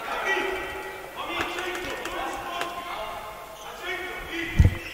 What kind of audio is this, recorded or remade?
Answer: recorded